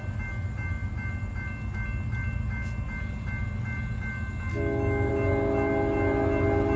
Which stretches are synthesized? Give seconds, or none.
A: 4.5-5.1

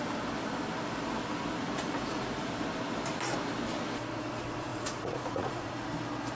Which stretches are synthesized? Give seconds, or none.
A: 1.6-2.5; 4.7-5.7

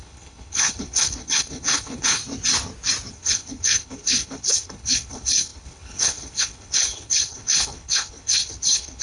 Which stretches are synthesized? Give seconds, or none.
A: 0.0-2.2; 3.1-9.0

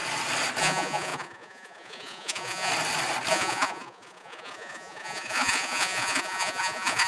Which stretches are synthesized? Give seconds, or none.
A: 0.6-2.7; 3.3-7.1